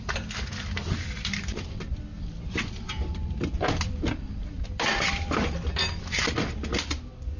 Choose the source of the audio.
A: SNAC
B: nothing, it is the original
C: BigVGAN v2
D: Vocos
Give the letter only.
C